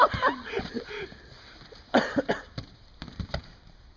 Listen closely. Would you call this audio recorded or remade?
recorded